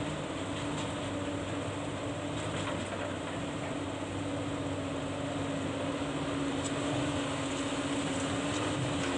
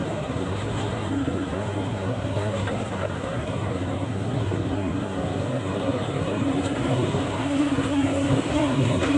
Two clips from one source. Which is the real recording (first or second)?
first